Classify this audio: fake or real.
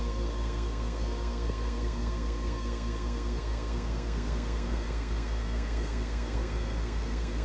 fake